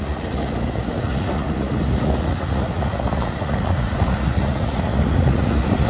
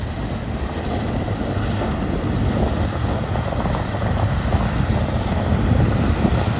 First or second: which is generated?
first